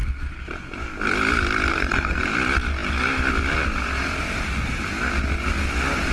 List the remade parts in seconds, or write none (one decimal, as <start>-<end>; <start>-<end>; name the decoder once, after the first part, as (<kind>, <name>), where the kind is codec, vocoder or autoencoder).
1.7-2.2 (codec, SNAC)